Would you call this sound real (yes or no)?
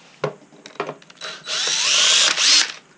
yes